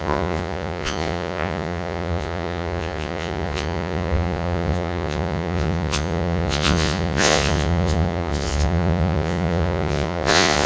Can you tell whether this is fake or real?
fake